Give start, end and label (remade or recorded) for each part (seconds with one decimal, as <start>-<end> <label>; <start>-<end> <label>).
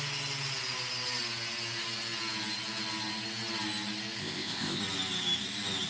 0.0-4.2 recorded; 4.2-4.8 remade; 4.8-5.9 recorded